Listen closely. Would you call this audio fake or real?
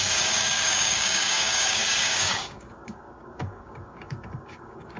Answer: fake